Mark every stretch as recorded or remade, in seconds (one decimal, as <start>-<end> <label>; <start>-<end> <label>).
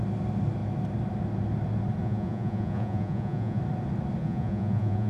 0.0-2.0 recorded; 2.0-3.6 remade; 3.6-4.2 recorded; 4.2-5.1 remade